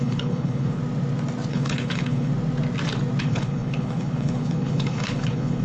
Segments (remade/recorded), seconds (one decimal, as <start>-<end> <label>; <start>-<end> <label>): 0.0-0.8 remade; 0.8-1.5 recorded; 1.5-2.3 remade; 2.3-3.2 recorded; 3.2-5.6 remade